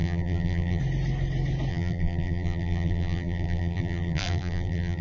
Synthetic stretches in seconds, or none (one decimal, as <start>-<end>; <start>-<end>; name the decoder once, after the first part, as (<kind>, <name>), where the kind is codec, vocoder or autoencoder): 0.0-0.8 (vocoder, BigVGAN v2); 1.7-5.0